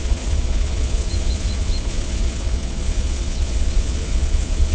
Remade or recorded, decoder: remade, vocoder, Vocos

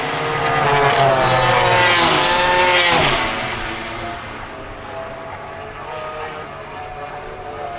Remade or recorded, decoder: recorded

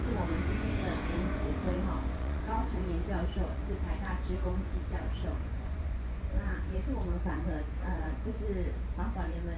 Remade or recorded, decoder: remade, vocoder, Vocos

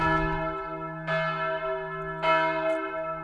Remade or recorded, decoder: recorded